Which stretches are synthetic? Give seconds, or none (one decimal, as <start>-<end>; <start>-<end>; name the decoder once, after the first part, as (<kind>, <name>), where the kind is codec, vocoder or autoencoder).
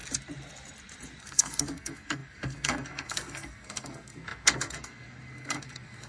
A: 1.2-6.1 (codec, SNAC)